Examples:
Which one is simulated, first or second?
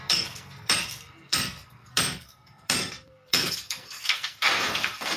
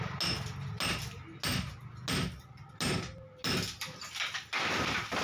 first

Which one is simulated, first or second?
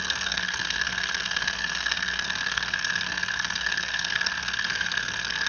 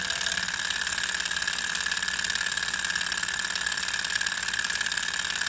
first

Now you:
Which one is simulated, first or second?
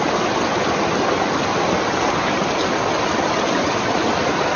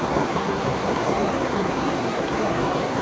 second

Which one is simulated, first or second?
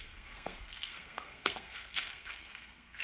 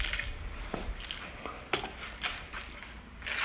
first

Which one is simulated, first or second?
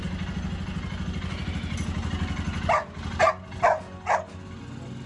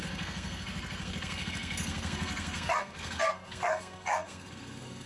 second